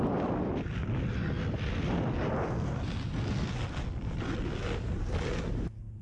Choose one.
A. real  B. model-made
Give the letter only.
A